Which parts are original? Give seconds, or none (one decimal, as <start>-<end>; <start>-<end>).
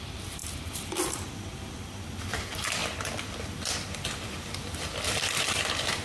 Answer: 2.8-4.2